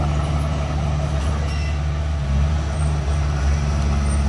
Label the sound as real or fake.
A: real